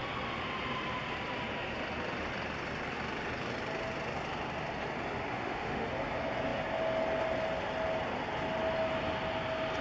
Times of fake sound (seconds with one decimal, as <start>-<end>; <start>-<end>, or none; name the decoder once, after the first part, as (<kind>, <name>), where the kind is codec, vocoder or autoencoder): 5.3-5.9 (autoencoder, DAC-VAE)